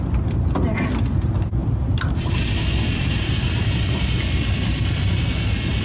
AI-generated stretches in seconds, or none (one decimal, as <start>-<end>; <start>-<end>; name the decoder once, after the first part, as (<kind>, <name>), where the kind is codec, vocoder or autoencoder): 1.6-5.1 (vocoder, BigVGAN v2)